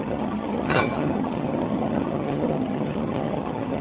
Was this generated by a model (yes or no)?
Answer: yes